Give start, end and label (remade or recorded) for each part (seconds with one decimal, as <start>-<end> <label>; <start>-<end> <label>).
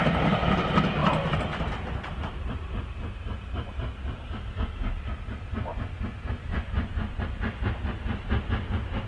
0.0-6.5 recorded; 6.5-7.2 remade; 7.2-9.1 recorded